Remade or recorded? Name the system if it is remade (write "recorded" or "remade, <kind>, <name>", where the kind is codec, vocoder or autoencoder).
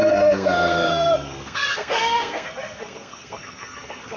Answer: remade, codec, SNAC